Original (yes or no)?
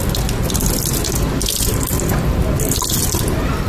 yes